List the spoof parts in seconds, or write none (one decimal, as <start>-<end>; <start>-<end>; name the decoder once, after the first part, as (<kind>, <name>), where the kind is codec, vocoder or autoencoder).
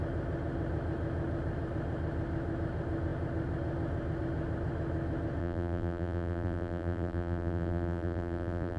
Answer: 5.4-8.8 (vocoder, BigVGAN v2)